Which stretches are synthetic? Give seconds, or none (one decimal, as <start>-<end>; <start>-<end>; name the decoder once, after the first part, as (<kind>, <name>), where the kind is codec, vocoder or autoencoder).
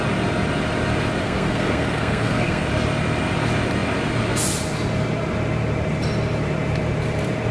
1.2-2.7 (codec, SNAC)